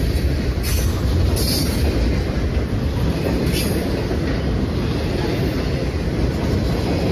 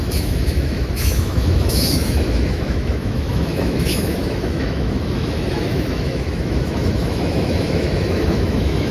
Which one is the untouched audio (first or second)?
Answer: first